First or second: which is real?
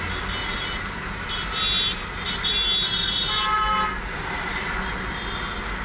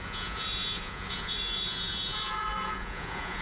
first